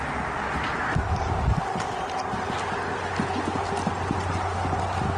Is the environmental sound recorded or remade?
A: recorded